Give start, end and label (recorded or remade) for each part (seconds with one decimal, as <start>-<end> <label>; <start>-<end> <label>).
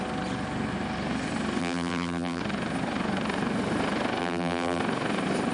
0.0-1.6 recorded; 1.6-2.4 remade; 2.4-4.2 recorded; 4.2-4.8 remade; 4.8-5.5 recorded